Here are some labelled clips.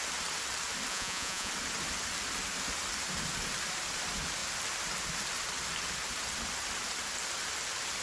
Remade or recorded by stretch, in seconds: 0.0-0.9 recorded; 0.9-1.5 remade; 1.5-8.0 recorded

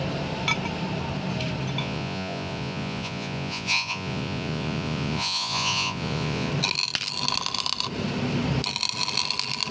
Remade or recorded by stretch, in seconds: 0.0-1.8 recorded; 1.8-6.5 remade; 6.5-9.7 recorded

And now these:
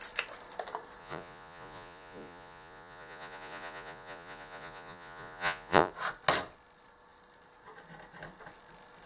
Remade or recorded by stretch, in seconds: 0.0-1.0 recorded; 1.0-5.9 remade; 5.9-9.1 recorded

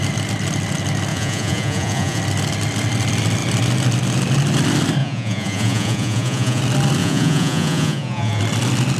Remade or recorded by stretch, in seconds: 0.0-1.1 recorded; 1.1-2.2 remade; 2.2-5.0 recorded; 5.0-6.6 remade; 6.6-7.0 recorded; 7.0-8.4 remade; 8.4-9.0 recorded

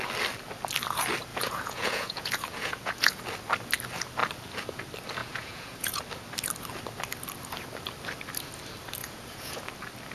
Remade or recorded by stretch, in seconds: 0.0-1.3 recorded; 1.3-3.2 remade; 3.2-5.2 recorded; 5.2-6.0 remade; 6.0-9.0 recorded; 9.0-9.6 remade; 9.6-10.1 recorded

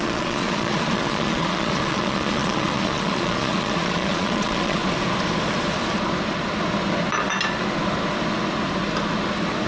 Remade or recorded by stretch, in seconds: 0.0-4.8 remade; 4.8-9.7 recorded

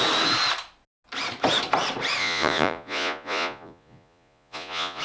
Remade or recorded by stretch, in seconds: 0.0-2.2 recorded; 2.2-5.0 remade